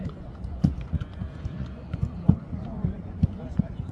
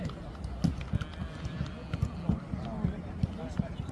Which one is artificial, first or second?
first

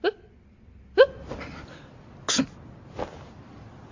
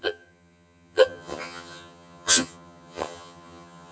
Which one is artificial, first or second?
second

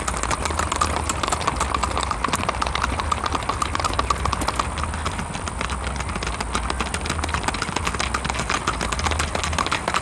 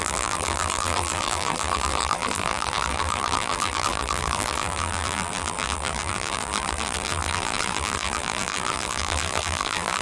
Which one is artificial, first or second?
second